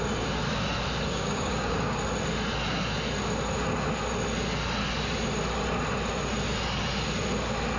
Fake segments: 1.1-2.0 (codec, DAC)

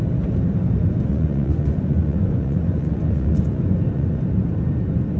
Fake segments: 1.1-4.2 (vocoder, Vocos)

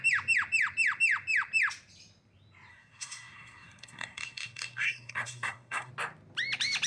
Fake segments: 2.7-5.9 (codec, SNAC)

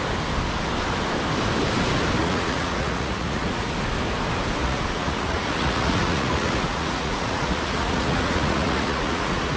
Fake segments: 2.2-3.7 (vocoder, Vocos); 4.6-9.6

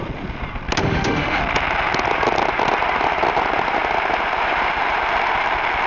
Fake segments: 0.8-1.4 (autoencoder, DAC-VAE)